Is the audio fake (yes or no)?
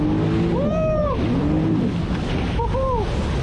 no